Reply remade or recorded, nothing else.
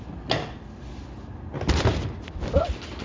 recorded